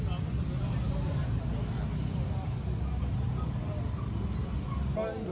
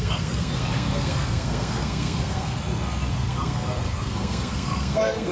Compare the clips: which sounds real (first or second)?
first